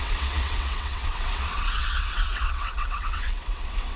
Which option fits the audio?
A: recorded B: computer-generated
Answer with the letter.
B